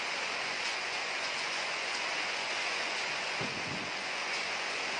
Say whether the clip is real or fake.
fake